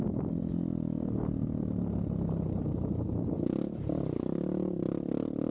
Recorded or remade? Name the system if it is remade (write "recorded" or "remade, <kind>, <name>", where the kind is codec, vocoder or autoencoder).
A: recorded